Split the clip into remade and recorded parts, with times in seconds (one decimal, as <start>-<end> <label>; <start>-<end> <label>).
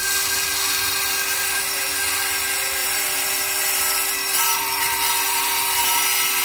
0.0-2.8 recorded; 2.8-5.9 remade; 5.9-6.4 recorded